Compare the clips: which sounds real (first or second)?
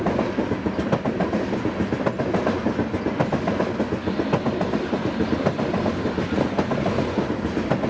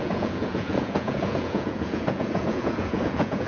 first